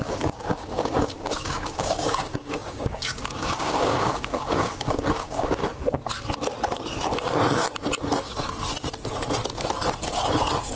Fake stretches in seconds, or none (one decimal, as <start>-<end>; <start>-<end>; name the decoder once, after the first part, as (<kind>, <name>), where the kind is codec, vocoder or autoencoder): 0.0-5.6 (codec, DAC)